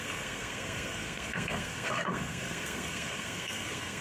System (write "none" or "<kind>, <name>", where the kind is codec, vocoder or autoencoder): codec, SNAC